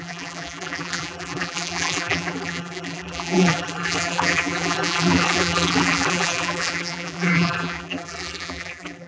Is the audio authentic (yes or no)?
no